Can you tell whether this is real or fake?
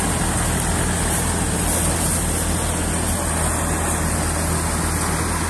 real